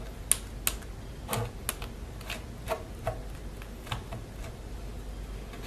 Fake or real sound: real